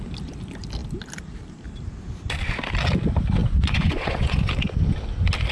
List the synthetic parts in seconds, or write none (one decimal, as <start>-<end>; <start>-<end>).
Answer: 3.4-4.5